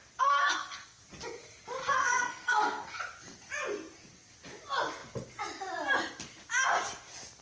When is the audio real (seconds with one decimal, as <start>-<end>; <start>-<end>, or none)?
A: 0.0-0.4; 1.0-1.8; 3.0-7.4